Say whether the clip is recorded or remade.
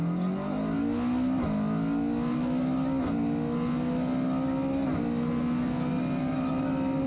recorded